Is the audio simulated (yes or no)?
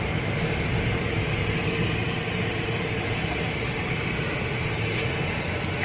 no